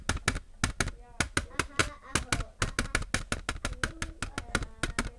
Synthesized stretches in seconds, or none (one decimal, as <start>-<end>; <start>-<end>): none